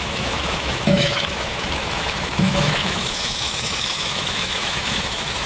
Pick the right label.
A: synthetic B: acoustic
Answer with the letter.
A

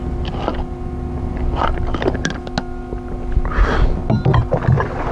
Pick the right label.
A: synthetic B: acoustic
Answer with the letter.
B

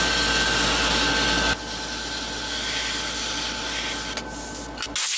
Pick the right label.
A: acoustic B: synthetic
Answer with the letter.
A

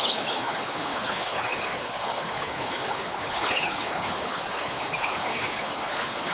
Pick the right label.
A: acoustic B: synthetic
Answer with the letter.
B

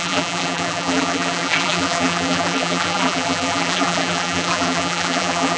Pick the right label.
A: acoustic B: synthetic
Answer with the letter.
B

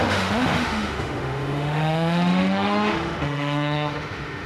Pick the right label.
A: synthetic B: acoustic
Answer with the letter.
A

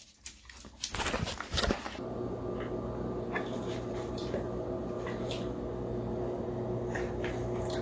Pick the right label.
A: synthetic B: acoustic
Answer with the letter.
B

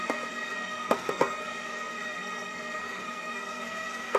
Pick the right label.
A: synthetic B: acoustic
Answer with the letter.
A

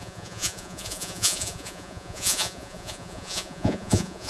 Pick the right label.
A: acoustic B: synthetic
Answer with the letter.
B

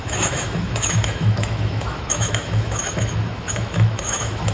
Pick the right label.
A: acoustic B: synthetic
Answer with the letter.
B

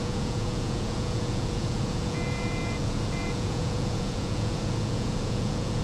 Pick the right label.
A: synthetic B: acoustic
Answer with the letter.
A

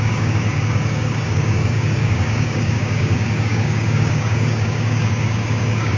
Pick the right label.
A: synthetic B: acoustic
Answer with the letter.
A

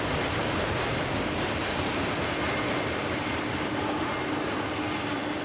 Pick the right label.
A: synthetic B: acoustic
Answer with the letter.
B